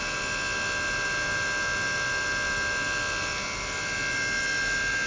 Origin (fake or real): real